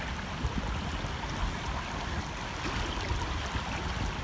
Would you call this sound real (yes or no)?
yes